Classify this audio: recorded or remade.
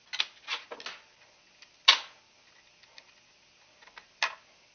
recorded